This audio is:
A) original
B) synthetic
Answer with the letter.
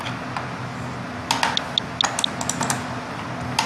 A